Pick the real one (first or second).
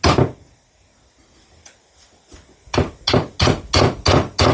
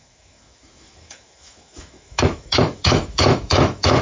first